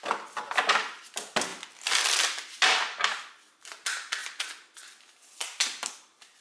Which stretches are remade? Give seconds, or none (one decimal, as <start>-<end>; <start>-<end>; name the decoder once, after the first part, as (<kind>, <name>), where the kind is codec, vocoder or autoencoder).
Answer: none